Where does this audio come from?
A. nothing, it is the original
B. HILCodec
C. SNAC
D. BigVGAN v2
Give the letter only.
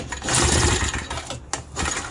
A